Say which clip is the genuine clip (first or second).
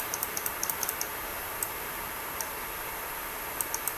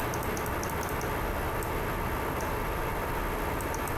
second